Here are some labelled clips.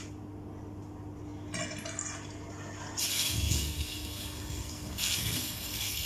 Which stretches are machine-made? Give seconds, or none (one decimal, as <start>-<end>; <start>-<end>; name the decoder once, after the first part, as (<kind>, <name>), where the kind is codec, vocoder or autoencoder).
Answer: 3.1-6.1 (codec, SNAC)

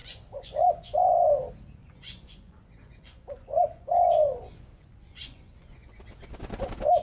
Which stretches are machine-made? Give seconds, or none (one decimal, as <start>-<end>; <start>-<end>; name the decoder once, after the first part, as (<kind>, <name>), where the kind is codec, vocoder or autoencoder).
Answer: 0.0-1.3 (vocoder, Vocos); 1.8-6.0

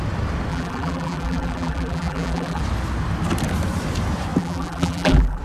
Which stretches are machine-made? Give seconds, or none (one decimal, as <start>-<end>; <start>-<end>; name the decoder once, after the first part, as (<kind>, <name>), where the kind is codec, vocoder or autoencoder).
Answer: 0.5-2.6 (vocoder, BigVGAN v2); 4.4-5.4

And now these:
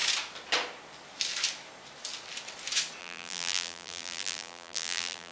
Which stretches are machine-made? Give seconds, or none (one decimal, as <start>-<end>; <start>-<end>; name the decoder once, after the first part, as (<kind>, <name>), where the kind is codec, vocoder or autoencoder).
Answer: 3.0-5.3 (vocoder, BigVGAN v2)

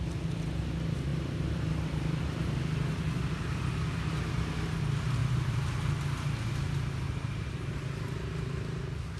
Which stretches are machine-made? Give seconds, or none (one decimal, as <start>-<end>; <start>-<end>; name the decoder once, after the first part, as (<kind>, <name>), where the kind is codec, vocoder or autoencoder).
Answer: 1.1-2.5 (vocoder, BigVGAN v2); 5.2-5.7